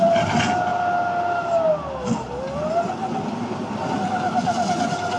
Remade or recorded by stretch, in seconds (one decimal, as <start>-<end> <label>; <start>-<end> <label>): 0.0-5.2 recorded